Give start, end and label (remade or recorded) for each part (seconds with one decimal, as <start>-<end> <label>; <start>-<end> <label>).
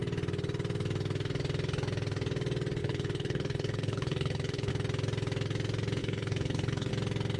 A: 0.0-2.8 recorded; 2.8-4.7 remade; 4.7-6.0 recorded; 6.0-6.9 remade; 6.9-7.4 recorded